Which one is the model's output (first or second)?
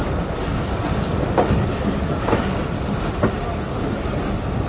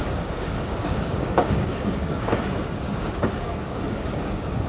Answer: second